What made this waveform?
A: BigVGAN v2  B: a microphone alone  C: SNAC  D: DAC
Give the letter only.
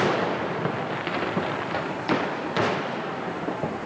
B